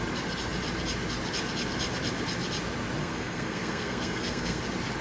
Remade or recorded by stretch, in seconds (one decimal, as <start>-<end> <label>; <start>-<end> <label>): 0.0-3.0 recorded; 3.0-4.6 remade; 4.6-5.0 recorded